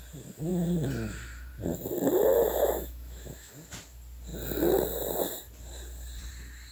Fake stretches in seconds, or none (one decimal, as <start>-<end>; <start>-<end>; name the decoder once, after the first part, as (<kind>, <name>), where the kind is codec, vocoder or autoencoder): 2.6-3.5 (autoencoder, DAC-VAE)